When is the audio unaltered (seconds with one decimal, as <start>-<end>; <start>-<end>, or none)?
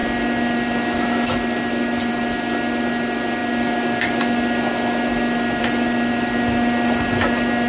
0.0-7.7